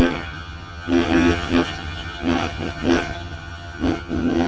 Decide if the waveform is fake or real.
fake